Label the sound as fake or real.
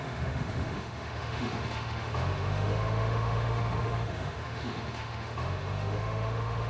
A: fake